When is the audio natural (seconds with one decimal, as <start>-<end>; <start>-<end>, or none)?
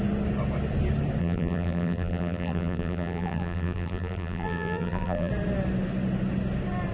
0.0-1.2; 5.3-6.9